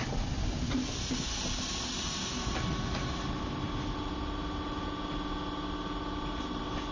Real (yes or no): yes